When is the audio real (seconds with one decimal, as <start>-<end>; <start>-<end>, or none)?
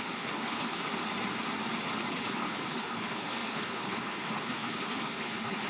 0.8-2.1